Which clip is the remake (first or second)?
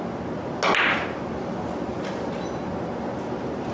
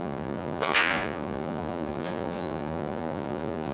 second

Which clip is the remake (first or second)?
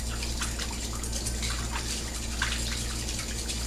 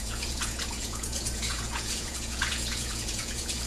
second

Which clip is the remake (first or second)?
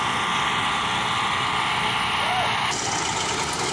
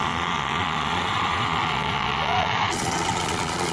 second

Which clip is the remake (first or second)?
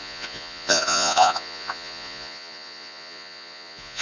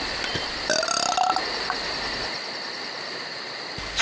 first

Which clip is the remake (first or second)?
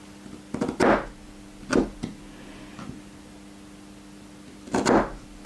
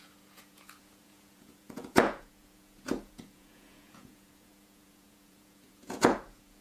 second